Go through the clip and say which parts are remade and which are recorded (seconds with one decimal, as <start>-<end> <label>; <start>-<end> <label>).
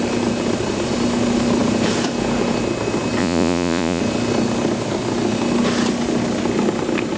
0.0-3.2 recorded; 3.2-4.0 remade; 4.0-7.2 recorded